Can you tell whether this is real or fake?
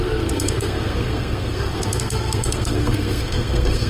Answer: fake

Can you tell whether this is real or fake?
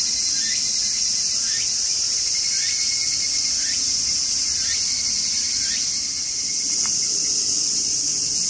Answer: real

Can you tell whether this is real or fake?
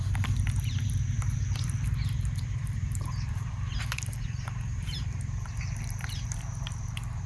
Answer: fake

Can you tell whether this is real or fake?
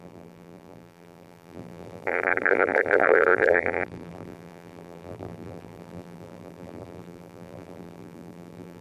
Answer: fake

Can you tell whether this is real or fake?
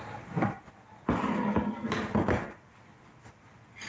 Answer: real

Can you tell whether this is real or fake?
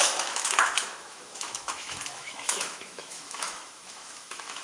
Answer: fake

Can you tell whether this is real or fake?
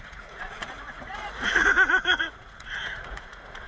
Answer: fake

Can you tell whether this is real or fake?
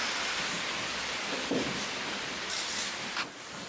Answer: real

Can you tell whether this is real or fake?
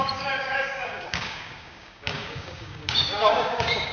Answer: fake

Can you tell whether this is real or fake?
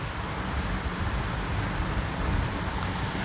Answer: real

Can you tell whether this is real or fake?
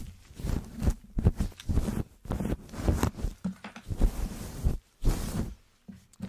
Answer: real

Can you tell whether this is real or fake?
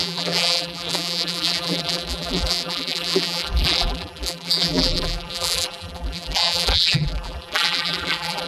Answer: fake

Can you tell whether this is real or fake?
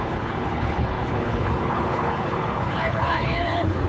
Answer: fake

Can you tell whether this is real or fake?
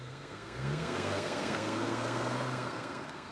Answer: fake